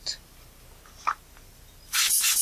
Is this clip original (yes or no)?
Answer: yes